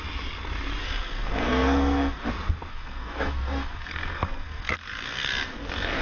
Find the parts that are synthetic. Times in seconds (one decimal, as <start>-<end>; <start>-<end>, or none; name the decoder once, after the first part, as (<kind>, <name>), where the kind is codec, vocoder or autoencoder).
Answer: 0.8-2.3 (codec, SNAC); 2.7-6.0